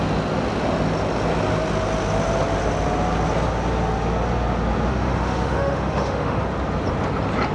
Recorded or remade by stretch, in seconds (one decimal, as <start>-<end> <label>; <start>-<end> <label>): 0.0-4.9 recorded; 4.9-6.4 remade; 6.4-7.5 recorded